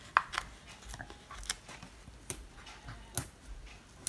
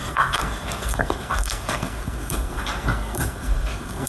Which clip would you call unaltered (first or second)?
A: first